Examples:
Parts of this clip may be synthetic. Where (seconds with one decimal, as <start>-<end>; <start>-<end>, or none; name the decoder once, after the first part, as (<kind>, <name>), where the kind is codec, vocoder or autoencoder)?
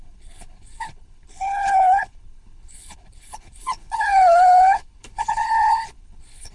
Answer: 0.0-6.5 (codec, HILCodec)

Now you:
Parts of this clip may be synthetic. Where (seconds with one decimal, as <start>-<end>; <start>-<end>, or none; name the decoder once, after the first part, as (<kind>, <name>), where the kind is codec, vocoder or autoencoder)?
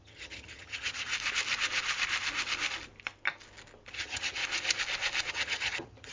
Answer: 0.0-1.1 (vocoder, HiFi-GAN); 3.9-4.4; 5.3-6.1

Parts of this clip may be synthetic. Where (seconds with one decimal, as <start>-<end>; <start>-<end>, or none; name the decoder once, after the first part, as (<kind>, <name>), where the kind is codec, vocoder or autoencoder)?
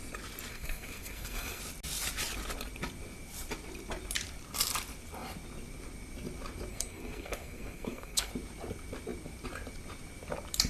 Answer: 0.5-1.6 (codec, SNAC); 6.7-8.3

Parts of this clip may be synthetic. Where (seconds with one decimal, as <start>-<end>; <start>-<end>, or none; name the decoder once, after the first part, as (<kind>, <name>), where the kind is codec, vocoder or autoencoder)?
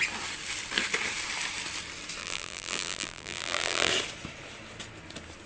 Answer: 2.2-3.9 (vocoder, BigVGAN v2)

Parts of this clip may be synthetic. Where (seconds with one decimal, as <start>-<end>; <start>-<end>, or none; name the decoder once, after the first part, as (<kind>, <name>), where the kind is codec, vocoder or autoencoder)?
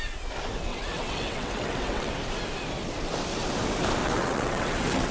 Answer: 0.7-2.1 (vocoder, WaveNeXt); 4.0-5.1